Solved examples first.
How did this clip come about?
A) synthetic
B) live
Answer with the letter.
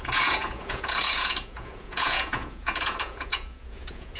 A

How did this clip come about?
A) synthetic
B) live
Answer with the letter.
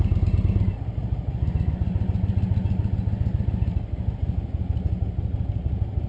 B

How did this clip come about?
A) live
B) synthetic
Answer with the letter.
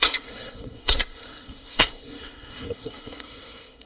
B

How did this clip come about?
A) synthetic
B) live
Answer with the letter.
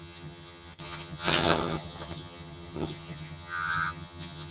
A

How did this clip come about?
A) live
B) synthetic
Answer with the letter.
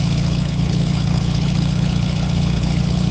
B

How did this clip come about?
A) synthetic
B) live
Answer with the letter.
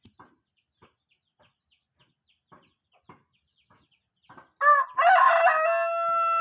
B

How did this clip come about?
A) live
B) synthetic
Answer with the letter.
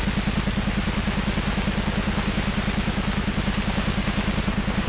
A